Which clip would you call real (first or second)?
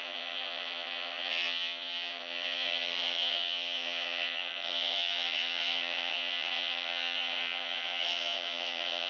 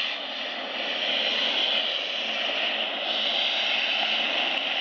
second